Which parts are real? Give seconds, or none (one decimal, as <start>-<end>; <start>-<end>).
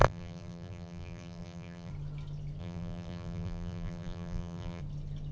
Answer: 1.9-2.6; 4.8-5.3